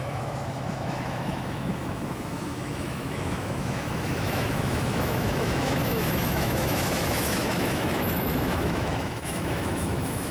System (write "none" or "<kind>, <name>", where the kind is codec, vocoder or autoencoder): autoencoder, DAC-VAE